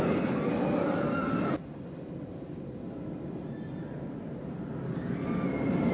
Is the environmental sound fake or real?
real